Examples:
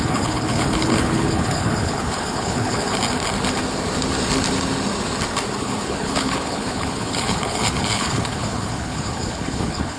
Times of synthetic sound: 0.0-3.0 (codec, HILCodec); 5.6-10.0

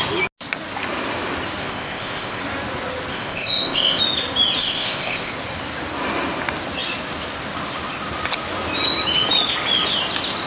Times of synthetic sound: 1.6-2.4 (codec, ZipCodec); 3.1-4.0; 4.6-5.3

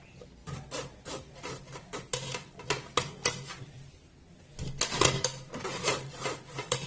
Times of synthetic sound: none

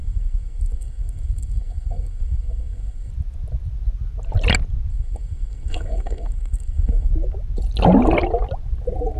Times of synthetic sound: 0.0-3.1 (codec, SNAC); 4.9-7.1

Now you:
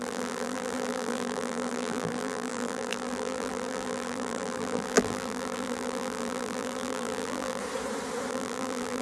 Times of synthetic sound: 0.0-7.6 (vocoder, BigVGAN v2); 8.3-9.0

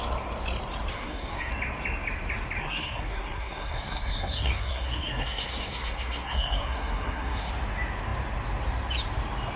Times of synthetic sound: 0.9-1.5 (codec, SNAC); 2.6-7.5

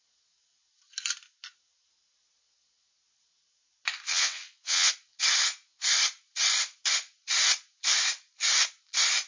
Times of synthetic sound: 4.1-4.9 (vocoder, WaveNeXt)